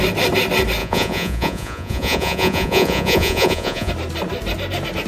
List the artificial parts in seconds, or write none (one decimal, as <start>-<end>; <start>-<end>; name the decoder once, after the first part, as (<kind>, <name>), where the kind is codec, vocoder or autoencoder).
0.8-3.9 (vocoder, Vocos)

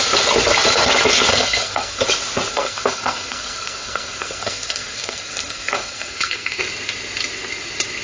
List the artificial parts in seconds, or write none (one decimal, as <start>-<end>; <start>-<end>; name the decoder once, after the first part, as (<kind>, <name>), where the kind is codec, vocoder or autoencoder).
1.3-2.0 (codec, SNAC); 2.5-6.6

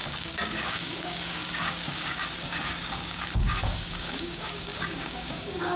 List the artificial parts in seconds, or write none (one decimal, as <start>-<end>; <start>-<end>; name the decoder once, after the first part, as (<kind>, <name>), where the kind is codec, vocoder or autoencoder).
0.0-5.8 (codec, DAC)

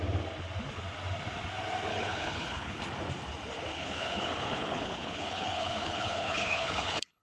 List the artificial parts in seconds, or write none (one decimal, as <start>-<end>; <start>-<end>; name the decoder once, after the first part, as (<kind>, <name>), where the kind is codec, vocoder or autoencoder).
1.9-2.8 (codec, HILCodec); 3.7-7.2

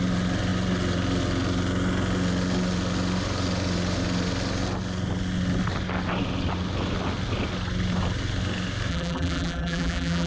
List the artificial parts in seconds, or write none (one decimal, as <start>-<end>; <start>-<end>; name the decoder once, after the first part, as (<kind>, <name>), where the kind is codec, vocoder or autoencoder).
8.9-10.3 (vocoder, BigVGAN v2)

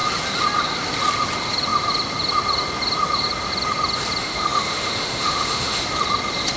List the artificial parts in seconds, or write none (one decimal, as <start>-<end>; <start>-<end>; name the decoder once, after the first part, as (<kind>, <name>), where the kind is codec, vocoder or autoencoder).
4.2-5.8 (autoencoder, DAC-VAE)

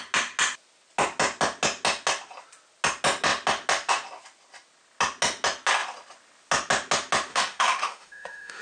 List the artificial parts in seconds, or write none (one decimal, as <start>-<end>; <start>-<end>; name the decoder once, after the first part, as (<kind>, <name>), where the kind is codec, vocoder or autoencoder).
7.3-8.6 (autoencoder, DAC-VAE)